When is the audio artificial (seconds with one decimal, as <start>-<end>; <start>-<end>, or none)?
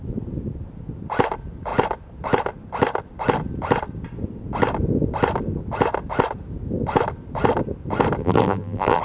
8.2-9.0